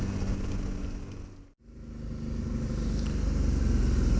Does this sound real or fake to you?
real